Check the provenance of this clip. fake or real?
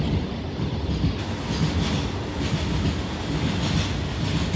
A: real